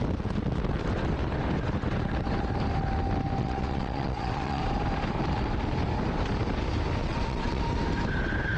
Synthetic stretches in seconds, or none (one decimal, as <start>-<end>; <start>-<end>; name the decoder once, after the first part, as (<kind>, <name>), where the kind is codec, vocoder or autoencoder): 3.4-4.6 (vocoder, WaveNeXt); 7.0-7.6